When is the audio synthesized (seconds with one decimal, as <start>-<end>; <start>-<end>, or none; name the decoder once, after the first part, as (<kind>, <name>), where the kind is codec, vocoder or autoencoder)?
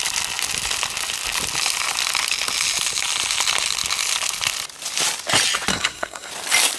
5.7-6.3 (codec, SNAC)